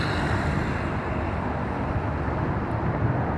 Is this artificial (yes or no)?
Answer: yes